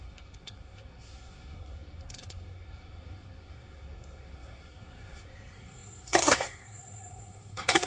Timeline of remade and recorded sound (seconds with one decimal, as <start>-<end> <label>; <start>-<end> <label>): 0.0-7.9 remade